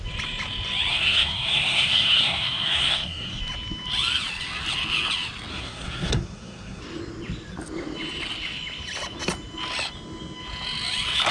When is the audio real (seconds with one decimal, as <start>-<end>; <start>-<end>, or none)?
0.0-0.9; 3.4-5.5; 6.8-11.3